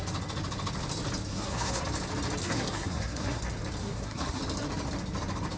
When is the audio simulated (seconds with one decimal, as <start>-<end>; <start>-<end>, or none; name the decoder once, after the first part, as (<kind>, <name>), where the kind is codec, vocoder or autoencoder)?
1.3-1.8 (codec, SNAC); 2.4-3.4; 3.8-4.4

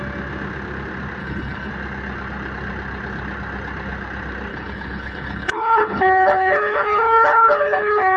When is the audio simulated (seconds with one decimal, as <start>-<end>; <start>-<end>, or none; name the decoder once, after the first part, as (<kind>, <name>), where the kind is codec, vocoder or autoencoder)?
1.2-1.7 (codec, HILCodec); 4.5-8.2

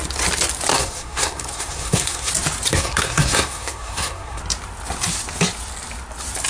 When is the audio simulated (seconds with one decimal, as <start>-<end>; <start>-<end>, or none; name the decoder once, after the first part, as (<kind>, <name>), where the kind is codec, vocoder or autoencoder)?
0.7-2.3 (codec, SNAC); 2.7-4.4

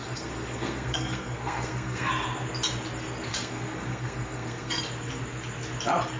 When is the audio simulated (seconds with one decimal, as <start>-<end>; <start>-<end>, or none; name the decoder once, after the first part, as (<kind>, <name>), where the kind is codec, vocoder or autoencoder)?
0.0-2.1 (codec, SNAC); 3.3-4.8

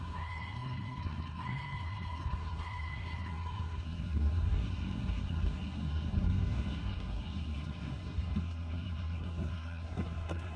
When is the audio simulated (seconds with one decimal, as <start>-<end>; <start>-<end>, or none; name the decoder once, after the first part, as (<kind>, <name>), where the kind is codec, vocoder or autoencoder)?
0.0-10.6 (codec, SNAC)

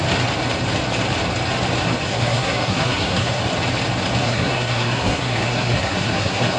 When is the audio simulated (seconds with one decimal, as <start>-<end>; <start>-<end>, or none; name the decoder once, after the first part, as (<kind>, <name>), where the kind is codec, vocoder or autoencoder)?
2.0-3.4 (codec, SNAC); 4.2-6.6

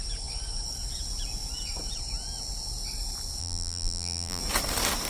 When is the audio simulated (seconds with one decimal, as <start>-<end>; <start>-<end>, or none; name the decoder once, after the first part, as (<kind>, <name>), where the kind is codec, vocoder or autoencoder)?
3.4-4.4 (vocoder, BigVGAN v2)